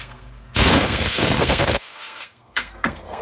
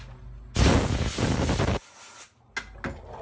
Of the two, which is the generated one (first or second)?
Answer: first